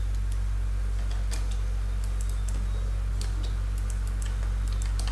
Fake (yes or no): no